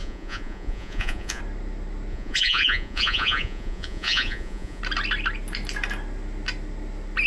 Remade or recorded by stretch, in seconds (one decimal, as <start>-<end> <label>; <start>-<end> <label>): 0.0-1.4 remade; 1.4-2.1 recorded; 2.1-4.8 remade; 4.8-7.3 recorded